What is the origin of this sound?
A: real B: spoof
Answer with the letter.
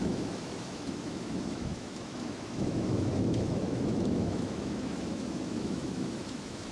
B